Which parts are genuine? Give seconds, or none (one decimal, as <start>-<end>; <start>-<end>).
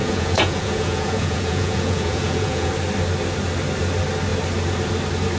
2.7-5.4